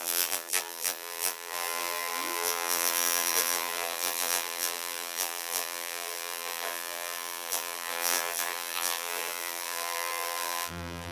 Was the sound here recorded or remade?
remade